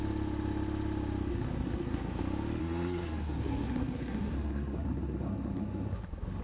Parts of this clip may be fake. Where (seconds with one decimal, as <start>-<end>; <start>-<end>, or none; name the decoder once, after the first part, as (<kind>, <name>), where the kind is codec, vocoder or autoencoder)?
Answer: 1.3-2.2 (codec, SNAC); 2.6-6.4